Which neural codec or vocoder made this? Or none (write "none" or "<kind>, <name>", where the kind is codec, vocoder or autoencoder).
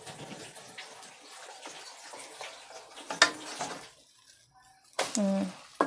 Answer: none